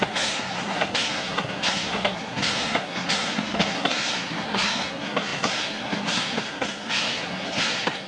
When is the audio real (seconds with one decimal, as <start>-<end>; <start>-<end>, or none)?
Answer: none